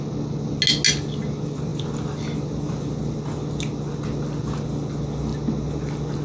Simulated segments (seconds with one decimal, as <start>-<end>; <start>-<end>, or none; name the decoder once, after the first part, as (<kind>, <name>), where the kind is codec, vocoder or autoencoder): none